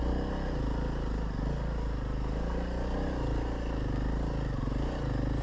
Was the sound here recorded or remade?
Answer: recorded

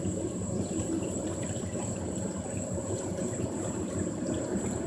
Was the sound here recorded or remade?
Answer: remade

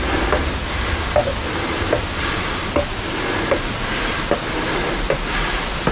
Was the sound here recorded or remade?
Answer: recorded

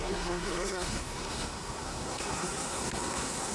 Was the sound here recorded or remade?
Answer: remade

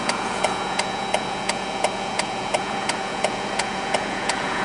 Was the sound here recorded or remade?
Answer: remade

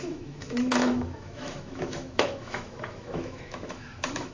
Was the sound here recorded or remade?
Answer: remade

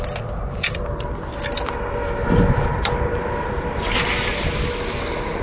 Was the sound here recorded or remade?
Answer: recorded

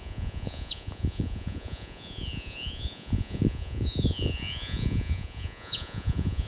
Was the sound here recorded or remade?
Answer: remade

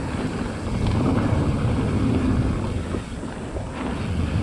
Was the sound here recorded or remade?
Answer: recorded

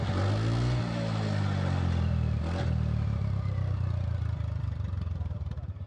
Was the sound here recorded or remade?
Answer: recorded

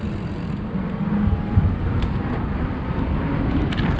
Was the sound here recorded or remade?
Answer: recorded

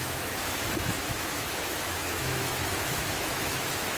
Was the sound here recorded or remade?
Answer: remade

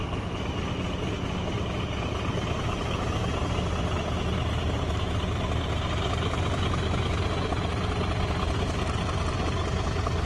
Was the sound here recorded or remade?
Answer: recorded